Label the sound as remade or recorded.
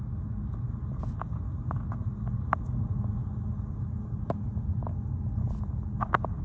recorded